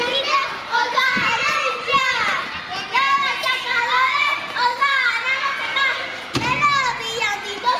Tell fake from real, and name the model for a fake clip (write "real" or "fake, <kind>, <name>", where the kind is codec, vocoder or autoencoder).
real